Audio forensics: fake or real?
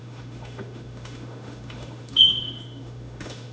fake